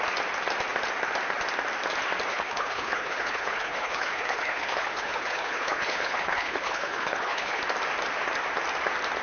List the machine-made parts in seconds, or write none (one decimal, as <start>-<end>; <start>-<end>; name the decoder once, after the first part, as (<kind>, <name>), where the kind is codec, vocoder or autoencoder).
2.3-7.6 (codec, HILCodec)